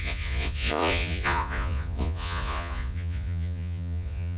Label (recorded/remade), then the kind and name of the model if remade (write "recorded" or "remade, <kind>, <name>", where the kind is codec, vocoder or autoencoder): remade, vocoder, Vocos